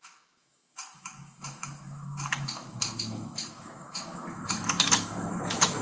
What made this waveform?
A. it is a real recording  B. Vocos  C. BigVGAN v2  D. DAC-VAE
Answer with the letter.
D